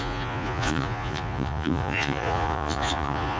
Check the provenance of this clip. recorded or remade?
remade